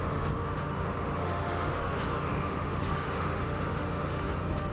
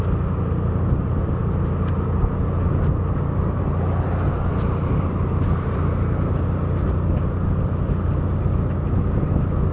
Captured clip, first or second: second